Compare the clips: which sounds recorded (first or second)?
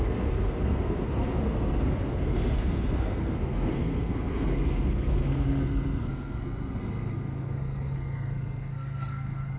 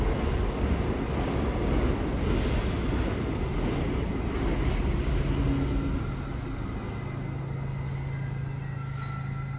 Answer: second